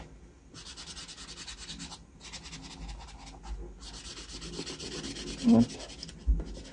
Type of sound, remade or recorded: recorded